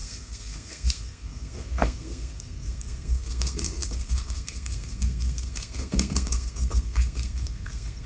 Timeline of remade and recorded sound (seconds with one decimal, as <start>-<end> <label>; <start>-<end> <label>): 0.0-8.1 remade